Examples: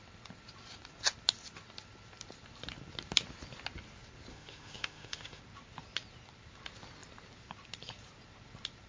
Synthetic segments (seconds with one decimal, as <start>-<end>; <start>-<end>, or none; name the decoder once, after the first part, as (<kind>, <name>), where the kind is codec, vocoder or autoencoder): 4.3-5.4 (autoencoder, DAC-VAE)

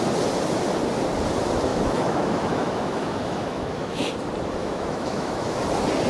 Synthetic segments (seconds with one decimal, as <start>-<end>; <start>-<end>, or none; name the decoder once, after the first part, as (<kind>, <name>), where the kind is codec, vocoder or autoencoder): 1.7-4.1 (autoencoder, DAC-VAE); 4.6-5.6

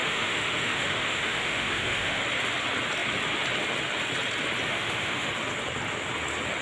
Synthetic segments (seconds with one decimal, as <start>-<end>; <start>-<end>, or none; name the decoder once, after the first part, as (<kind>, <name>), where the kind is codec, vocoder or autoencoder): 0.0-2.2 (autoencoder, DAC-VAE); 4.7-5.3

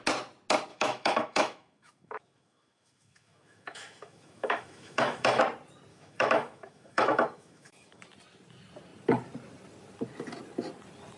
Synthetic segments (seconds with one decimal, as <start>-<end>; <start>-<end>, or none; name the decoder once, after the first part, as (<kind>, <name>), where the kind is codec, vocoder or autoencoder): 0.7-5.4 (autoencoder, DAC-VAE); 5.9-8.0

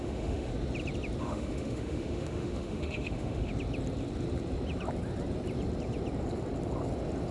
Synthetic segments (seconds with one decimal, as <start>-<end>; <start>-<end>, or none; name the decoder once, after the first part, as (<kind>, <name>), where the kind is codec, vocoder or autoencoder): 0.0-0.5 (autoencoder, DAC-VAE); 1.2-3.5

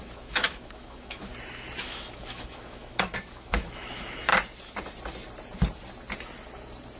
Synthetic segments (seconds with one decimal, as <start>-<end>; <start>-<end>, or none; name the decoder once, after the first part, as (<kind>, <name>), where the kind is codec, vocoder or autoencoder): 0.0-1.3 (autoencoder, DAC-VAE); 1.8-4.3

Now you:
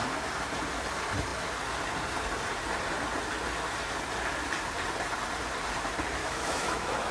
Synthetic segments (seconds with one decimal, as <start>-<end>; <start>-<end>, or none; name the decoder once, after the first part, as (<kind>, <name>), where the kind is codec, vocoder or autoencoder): 6.2-7.1 (autoencoder, DAC-VAE)

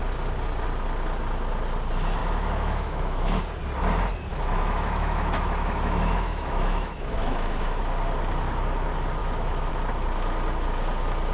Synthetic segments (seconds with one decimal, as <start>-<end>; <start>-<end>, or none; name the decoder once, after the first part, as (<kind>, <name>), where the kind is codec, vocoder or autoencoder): 2.2-3.4 (autoencoder, DAC-VAE); 4.3-7.8; 9.2-9.7